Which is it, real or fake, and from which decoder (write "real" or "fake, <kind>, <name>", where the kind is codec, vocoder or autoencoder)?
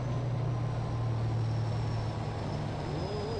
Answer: real